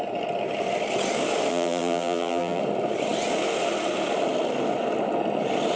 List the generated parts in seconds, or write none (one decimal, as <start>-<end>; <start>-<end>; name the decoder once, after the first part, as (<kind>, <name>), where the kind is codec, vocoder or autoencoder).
1.5-2.6 (vocoder, BigVGAN v2)